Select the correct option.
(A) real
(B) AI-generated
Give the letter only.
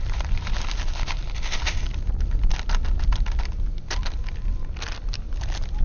A